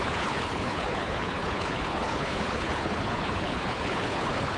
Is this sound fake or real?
fake